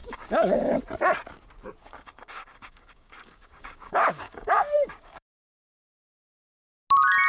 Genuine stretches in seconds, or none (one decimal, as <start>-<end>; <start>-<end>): 0.8-1.8; 6.2-7.3